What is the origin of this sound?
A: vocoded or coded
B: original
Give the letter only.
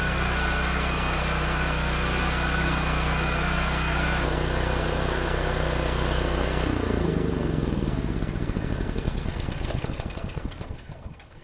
A